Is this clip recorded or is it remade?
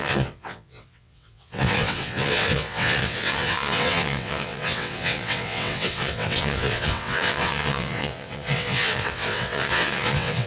remade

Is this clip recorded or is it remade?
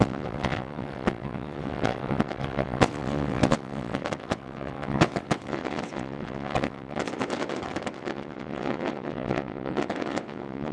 remade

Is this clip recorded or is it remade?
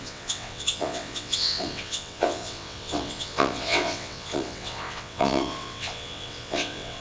remade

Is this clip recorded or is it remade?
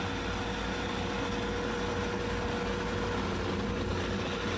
recorded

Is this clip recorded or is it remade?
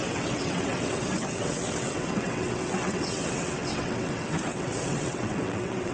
remade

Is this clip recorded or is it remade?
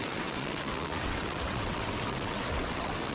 remade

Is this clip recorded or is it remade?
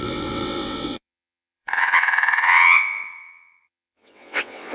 remade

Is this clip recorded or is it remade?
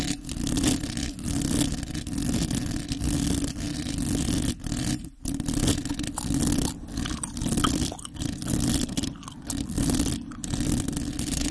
recorded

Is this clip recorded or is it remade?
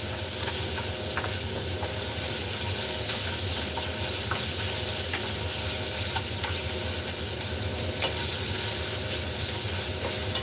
recorded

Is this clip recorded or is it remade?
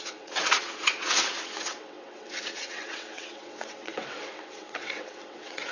remade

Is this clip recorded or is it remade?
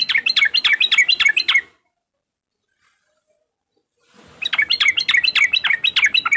recorded